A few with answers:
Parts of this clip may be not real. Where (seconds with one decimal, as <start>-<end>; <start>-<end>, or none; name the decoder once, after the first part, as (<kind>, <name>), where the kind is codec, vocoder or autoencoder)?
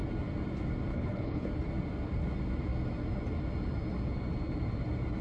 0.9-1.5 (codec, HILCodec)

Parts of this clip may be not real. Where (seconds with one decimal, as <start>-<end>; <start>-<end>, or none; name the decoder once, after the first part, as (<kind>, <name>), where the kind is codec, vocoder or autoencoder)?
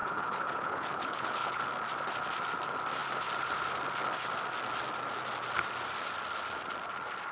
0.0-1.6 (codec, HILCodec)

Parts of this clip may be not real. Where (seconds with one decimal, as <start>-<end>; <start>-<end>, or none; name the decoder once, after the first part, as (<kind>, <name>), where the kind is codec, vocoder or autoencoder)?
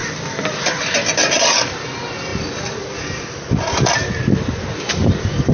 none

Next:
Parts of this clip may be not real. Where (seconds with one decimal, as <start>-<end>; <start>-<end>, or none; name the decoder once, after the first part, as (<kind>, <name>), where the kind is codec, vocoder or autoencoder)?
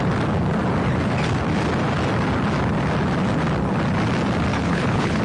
4.5-5.2 (codec, HILCodec)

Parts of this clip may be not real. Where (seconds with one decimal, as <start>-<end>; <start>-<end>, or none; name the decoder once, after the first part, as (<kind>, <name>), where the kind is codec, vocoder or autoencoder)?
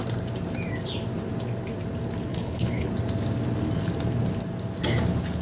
2.3-2.9 (codec, HILCodec)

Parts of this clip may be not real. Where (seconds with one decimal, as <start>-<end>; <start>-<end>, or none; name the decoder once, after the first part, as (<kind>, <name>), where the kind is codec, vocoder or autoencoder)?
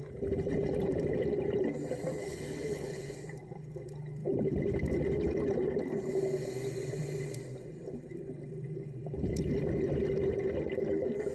2.2-3.0 (codec, HILCodec)